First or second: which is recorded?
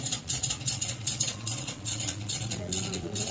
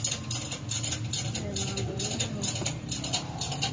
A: second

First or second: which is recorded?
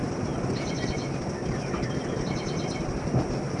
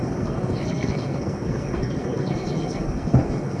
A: first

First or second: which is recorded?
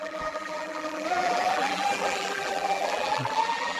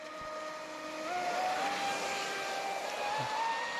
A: second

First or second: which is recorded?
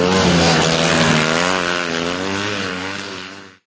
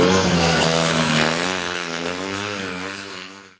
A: first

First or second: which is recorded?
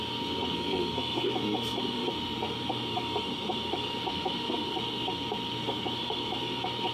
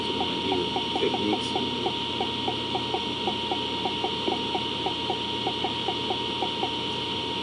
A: second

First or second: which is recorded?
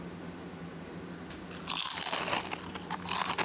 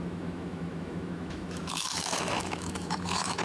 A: first